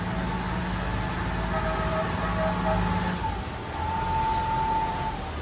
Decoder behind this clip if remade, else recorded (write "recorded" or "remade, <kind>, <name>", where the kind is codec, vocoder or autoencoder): recorded